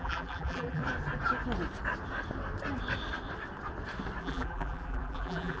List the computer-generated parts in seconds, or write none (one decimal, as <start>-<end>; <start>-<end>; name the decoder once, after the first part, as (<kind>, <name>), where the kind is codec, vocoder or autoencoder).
0.0-0.8 (vocoder, BigVGAN v2); 4.2-5.6